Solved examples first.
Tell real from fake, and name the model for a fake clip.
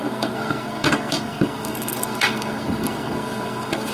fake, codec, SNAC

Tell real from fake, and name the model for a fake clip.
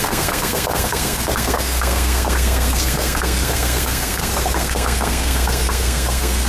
fake, codec, SNAC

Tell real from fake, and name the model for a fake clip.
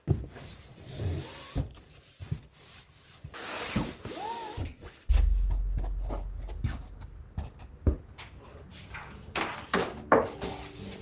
real